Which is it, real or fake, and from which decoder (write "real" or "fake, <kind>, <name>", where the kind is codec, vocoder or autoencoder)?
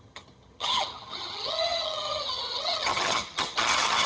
fake, vocoder, HiFi-GAN